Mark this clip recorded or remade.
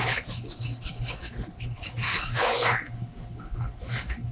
remade